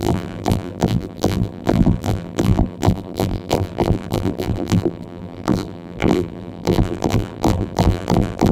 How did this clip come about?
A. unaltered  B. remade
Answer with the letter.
B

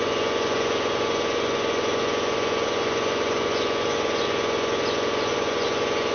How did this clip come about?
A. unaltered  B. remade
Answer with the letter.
B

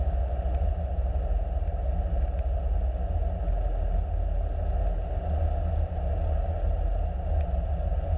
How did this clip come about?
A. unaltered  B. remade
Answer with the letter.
A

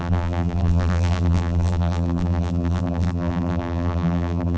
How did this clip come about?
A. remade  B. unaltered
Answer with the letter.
A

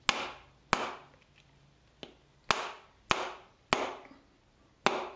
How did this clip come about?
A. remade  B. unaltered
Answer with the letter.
B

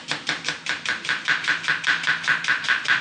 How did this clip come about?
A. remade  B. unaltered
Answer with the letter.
B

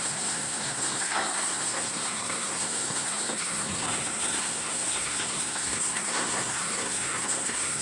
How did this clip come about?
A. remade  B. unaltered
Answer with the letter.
A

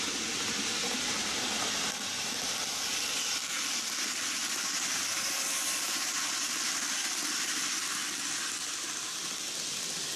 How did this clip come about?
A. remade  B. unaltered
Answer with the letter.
B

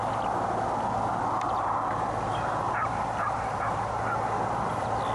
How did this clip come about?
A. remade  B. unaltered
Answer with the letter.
B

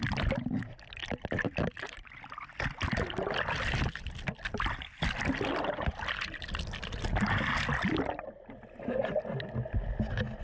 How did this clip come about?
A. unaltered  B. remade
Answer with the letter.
A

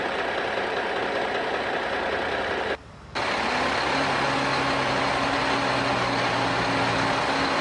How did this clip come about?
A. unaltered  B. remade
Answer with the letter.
A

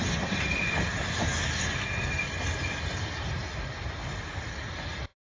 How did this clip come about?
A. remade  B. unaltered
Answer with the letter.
B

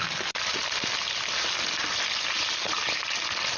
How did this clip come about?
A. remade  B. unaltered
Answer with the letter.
B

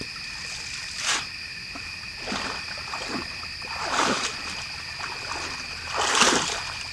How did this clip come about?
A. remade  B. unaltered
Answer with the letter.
B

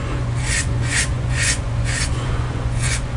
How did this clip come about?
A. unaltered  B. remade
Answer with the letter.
B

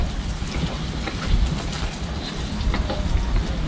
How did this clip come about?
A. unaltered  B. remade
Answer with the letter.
A